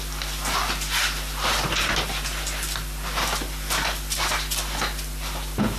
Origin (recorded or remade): recorded